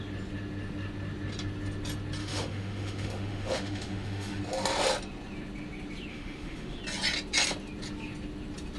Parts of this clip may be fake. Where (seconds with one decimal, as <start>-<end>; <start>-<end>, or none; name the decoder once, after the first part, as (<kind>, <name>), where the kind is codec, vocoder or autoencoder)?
2.2-4.4 (autoencoder, DAC-VAE); 6.1-6.8